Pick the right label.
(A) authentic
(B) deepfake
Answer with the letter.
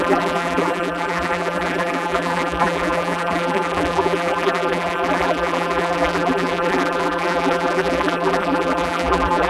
B